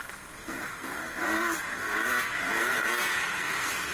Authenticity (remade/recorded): remade